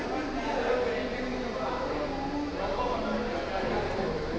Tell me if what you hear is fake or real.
real